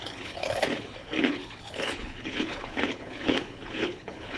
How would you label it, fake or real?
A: fake